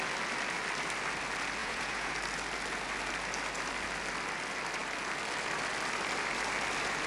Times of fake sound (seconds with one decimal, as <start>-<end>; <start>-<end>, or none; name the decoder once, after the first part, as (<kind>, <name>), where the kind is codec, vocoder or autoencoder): 1.6-2.1 (vocoder, Vocos)

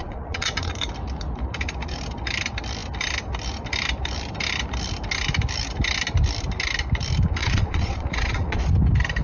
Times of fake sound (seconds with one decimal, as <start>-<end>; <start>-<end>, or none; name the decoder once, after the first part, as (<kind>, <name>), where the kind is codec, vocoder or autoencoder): 0.0-0.7 (vocoder, Vocos); 7.4-8.7

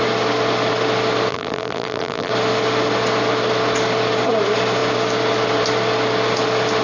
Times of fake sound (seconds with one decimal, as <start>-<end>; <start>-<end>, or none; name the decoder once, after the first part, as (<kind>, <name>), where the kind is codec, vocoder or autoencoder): 1.3-2.3 (vocoder, BigVGAN v2)